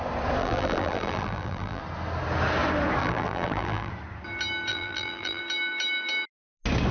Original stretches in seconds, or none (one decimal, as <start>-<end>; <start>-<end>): 0.0-0.4; 1.8-3.0; 3.9-4.7; 5.4-6.9